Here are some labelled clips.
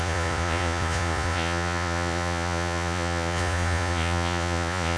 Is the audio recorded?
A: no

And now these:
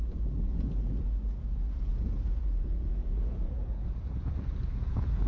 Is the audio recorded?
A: no